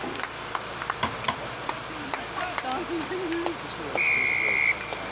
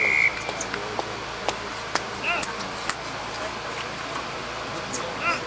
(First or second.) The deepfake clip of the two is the first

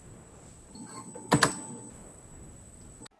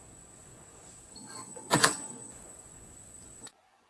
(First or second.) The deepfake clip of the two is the second